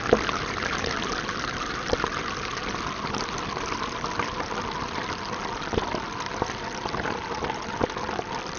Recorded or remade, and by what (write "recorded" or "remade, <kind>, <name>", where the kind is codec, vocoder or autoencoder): recorded